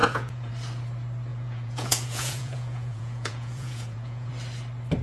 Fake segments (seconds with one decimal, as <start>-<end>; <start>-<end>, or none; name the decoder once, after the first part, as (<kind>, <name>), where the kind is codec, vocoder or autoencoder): 0.0-0.5 (vocoder, Vocos); 1.3-4.3